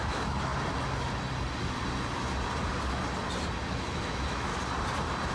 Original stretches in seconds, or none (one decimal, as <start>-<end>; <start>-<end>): 0.5-3.6; 4.5-5.3